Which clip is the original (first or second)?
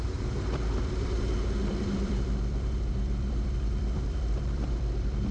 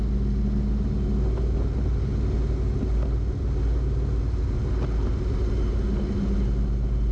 second